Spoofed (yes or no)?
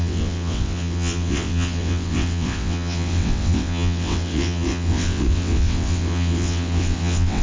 yes